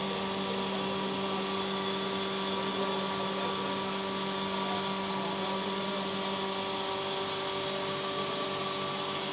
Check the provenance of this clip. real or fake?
real